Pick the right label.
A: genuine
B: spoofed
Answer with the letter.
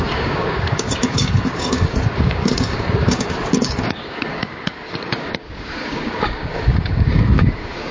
B